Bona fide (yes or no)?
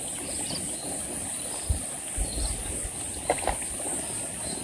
yes